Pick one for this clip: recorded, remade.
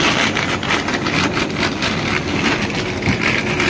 recorded